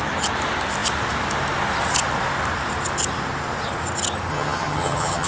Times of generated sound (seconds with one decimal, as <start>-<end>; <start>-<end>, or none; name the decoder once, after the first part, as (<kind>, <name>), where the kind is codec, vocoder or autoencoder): 4.3-5.3 (vocoder, HiFi-GAN)